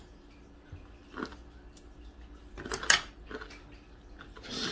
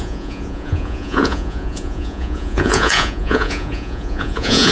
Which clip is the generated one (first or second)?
second